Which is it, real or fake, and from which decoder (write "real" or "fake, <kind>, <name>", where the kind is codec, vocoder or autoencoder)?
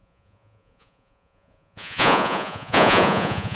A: fake, vocoder, Vocos